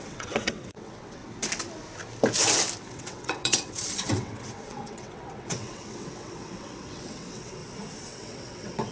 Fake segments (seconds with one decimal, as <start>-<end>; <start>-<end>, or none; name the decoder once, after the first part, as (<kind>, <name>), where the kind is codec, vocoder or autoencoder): 0.0-1.2 (vocoder, WaveNeXt); 2.9-7.6; 8.1-8.9